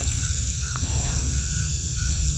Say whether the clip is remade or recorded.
remade